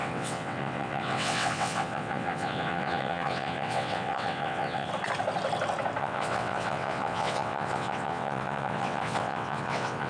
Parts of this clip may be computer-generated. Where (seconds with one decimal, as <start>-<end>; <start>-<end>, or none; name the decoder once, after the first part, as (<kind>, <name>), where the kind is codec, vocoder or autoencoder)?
0.0-4.9 (vocoder, WaveNeXt); 6.0-10.1